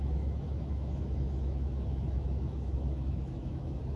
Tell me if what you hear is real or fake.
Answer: fake